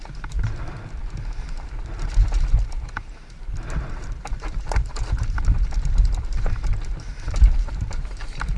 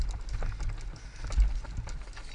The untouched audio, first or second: second